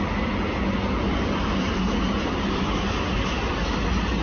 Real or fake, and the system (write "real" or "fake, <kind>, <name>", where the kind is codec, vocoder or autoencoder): real